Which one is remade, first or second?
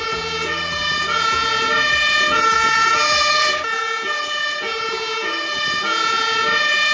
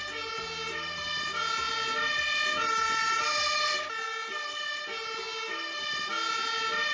first